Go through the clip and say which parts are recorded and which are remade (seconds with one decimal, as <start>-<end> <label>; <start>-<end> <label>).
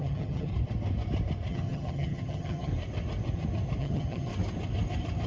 0.0-0.5 remade; 0.5-1.5 recorded; 1.5-2.7 remade; 2.7-3.8 recorded; 3.8-4.3 remade; 4.3-5.3 recorded